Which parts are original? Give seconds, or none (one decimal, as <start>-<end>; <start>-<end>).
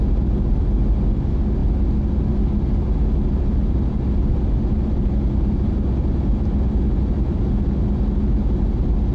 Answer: 0.0-9.1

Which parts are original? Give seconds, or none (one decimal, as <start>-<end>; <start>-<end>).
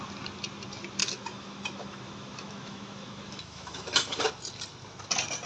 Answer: 0.0-1.0; 4.3-5.5